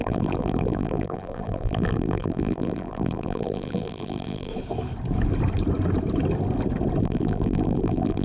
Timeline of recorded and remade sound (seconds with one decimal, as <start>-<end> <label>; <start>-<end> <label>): 0.0-4.5 remade; 4.5-7.0 recorded; 7.0-8.2 remade